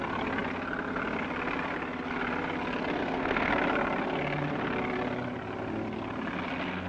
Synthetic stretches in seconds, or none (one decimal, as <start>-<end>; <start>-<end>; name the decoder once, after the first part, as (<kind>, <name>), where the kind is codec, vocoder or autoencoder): 3.0-3.5 (codec, SNAC)